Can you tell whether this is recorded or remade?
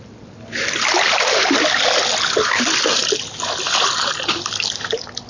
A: recorded